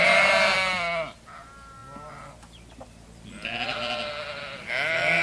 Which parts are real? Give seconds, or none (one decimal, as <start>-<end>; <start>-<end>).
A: 0.0-5.2